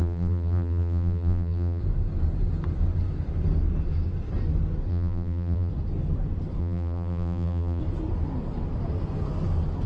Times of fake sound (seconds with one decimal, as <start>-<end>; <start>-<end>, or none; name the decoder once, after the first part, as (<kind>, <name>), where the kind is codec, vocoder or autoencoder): 0.0-1.8 (vocoder, BigVGAN v2); 4.9-5.7; 6.6-7.8